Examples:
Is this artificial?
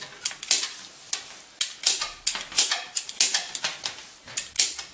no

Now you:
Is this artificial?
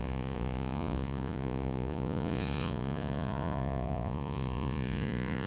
yes